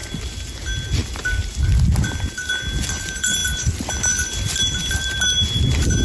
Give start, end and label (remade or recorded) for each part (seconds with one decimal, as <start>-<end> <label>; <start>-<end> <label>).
0.0-2.9 recorded; 2.9-6.0 remade